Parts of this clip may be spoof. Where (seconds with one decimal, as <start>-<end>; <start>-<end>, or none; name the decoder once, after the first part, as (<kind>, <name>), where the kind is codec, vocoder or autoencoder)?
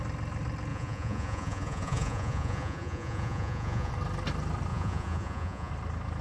0.7-3.9 (vocoder, Vocos); 4.7-5.7